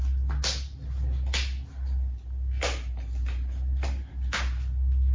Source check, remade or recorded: recorded